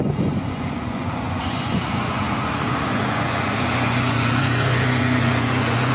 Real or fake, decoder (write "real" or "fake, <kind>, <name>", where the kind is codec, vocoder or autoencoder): fake, vocoder, Vocos